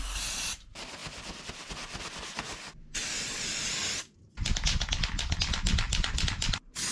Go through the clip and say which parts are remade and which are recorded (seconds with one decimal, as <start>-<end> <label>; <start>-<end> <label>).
0.0-6.9 recorded